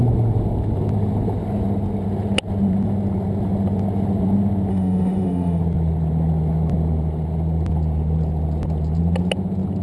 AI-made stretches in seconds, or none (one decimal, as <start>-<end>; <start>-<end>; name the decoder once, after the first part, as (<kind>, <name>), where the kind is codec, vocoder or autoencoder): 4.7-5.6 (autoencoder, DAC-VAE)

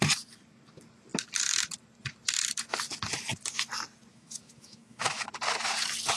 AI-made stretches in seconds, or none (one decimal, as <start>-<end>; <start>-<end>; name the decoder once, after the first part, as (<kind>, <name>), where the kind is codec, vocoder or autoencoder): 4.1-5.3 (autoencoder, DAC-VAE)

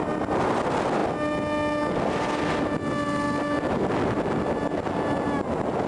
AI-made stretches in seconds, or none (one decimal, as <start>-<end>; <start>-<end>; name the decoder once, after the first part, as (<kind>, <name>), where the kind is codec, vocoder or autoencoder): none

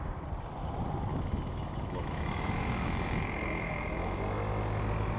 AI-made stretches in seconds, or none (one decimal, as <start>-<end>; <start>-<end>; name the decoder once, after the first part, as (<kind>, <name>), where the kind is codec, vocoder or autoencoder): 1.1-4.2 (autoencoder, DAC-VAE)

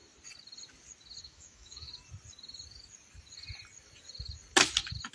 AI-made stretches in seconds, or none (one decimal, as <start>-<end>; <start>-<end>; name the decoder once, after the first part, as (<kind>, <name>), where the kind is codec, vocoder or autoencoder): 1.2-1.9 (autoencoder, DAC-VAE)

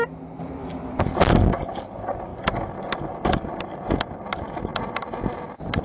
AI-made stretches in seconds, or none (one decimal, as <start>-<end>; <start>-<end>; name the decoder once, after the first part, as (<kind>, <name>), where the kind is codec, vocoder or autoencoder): none

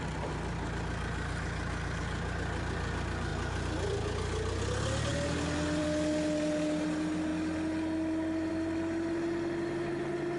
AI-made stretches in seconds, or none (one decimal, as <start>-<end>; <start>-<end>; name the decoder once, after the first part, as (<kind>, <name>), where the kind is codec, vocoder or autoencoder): none